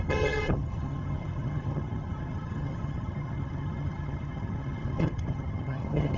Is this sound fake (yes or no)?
yes